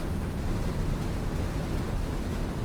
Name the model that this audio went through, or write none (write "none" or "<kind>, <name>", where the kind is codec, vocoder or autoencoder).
none